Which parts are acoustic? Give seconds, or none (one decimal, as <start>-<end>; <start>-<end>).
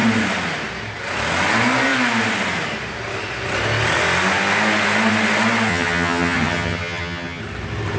0.0-5.7; 7.4-8.0